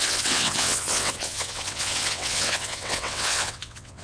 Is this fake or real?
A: fake